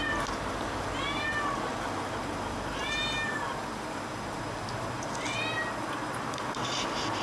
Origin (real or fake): real